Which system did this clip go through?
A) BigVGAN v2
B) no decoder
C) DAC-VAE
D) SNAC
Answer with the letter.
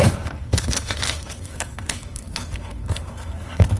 D